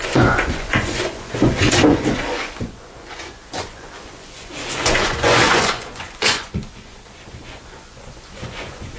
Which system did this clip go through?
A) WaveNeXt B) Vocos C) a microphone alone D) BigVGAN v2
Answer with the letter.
B